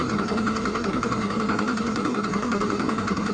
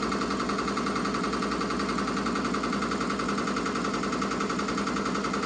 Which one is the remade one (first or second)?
first